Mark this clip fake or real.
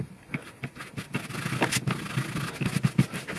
real